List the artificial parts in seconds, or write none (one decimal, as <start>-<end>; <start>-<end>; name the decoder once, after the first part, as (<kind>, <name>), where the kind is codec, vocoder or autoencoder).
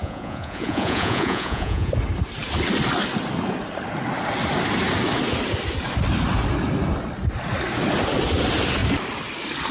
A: 0.0-1.9 (vocoder, Vocos)